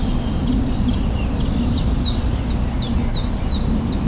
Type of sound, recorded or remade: recorded